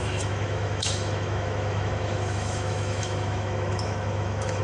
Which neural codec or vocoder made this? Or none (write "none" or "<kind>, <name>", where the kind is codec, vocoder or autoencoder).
autoencoder, DAC-VAE